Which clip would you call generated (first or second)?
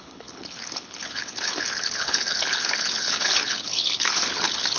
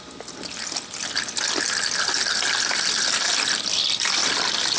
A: first